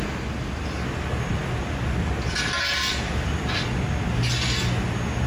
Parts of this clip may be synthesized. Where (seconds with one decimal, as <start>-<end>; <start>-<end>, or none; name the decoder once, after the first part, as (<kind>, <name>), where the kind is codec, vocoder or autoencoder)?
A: none